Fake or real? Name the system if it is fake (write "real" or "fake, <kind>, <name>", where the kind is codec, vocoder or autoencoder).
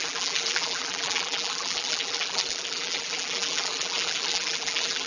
fake, vocoder, BigVGAN v2